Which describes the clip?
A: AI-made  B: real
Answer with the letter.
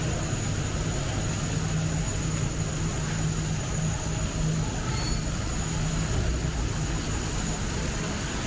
B